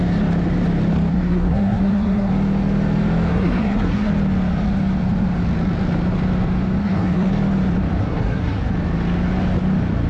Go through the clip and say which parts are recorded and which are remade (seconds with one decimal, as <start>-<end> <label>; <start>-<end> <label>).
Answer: 0.0-1.1 recorded; 1.1-2.3 remade; 2.3-3.3 recorded; 3.3-4.1 remade; 4.1-6.8 recorded; 6.8-7.3 remade; 7.3-8.0 recorded; 8.0-8.6 remade; 8.6-10.1 recorded